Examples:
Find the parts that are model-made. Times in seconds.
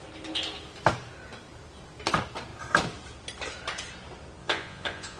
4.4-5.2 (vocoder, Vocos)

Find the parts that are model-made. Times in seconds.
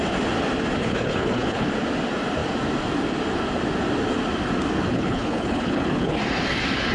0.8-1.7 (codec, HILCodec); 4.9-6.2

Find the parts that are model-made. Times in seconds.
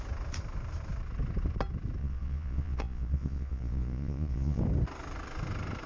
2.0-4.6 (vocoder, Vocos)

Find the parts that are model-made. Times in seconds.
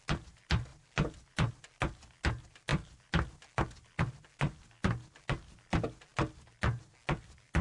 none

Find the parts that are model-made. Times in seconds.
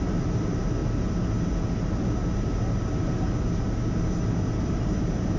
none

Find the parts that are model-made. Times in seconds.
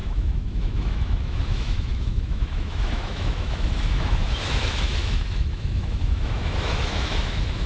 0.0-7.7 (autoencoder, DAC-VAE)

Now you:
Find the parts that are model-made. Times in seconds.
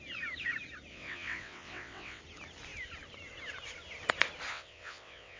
0.9-2.2 (vocoder, WaveNeXt); 4.5-5.4